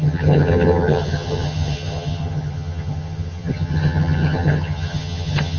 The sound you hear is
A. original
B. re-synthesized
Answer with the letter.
B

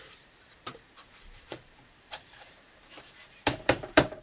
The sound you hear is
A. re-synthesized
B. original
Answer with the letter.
A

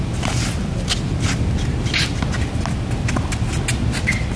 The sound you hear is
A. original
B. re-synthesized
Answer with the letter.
A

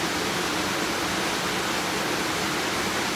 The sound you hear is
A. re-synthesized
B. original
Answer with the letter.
B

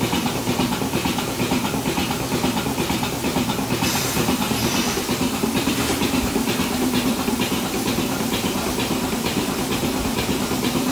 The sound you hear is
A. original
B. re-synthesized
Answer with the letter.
B